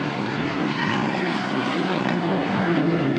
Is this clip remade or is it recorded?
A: remade